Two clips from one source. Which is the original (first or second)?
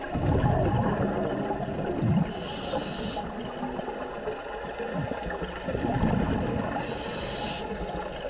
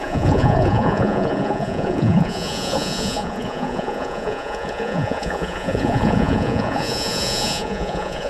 first